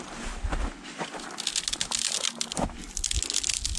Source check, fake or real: real